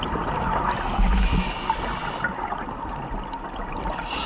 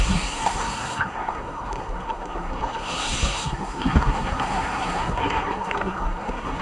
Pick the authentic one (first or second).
first